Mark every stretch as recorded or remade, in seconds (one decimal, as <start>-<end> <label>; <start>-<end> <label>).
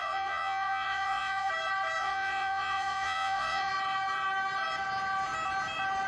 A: 0.0-1.5 remade; 1.5-2.0 recorded; 2.0-3.7 remade; 3.7-6.1 recorded